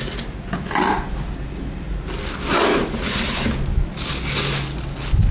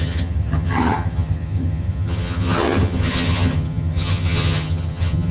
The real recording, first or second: first